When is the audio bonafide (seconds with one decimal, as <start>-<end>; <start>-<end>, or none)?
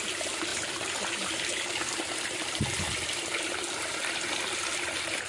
0.0-5.3